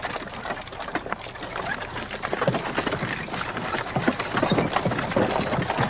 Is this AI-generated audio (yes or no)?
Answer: no